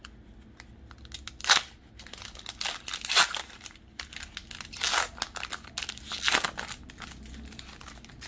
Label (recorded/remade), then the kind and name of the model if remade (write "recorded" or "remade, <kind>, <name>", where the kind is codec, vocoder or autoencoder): recorded